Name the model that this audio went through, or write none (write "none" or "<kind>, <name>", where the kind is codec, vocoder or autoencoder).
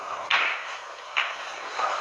codec, SNAC